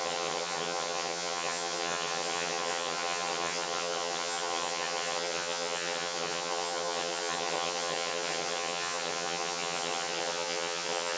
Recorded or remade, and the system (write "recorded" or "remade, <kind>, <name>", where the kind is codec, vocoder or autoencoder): remade, vocoder, HiFi-GAN